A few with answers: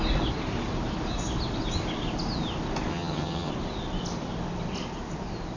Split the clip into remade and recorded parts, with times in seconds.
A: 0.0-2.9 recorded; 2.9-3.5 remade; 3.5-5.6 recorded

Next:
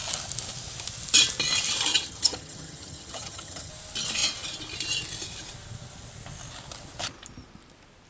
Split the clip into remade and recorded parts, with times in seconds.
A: 0.0-1.9 recorded; 1.9-3.7 remade; 3.7-8.1 recorded

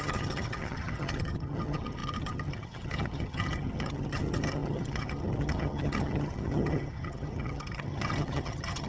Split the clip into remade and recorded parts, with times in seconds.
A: 0.0-8.9 remade

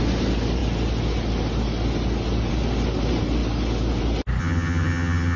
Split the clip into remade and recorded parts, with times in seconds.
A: 0.0-4.4 recorded; 4.4-5.4 remade

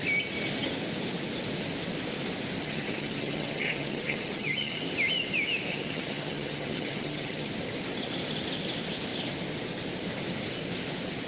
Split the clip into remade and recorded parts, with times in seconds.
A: 0.0-2.6 recorded; 2.6-4.8 remade; 4.8-5.7 recorded; 5.7-7.5 remade; 7.5-11.3 recorded